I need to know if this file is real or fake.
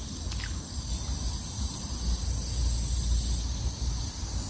real